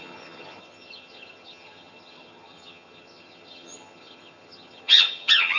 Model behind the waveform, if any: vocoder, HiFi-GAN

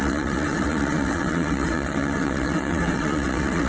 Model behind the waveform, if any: vocoder, WaveNeXt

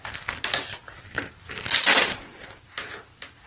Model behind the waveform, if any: none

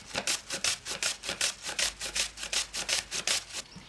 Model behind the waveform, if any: none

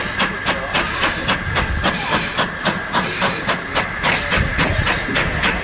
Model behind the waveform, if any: none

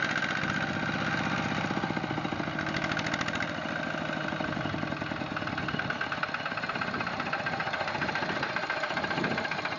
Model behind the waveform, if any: none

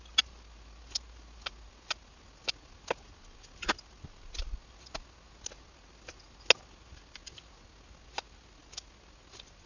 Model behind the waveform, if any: none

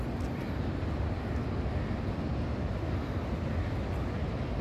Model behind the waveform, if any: none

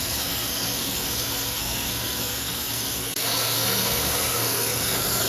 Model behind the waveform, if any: codec, SNAC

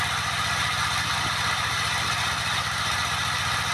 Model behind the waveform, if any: none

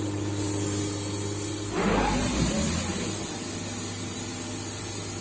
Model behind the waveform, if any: none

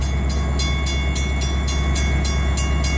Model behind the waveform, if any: none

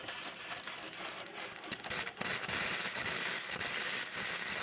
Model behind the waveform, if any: none